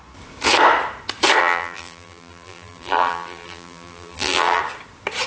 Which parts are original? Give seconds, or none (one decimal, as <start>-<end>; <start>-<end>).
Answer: 0.0-1.4; 4.6-5.3